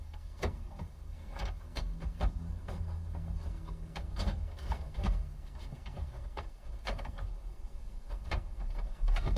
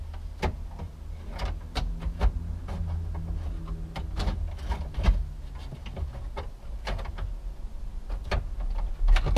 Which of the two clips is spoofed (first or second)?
first